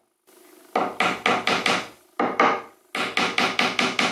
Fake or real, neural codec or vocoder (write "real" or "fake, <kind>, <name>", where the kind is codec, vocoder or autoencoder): real